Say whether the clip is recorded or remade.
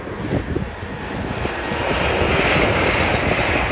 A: recorded